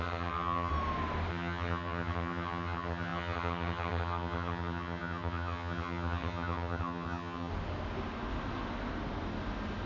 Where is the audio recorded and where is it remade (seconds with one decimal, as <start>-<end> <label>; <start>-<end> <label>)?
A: 0.0-0.7 remade; 0.7-1.3 recorded; 1.3-7.5 remade; 7.5-9.9 recorded